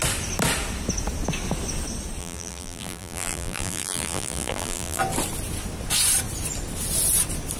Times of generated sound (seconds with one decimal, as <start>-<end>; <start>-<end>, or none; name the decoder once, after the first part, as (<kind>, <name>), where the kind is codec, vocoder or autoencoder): 2.2-5.0 (vocoder, BigVGAN v2)